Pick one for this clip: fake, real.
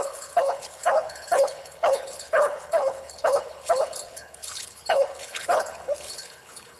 fake